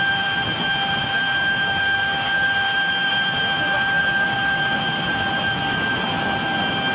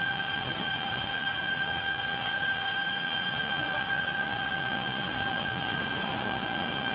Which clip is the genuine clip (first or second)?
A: first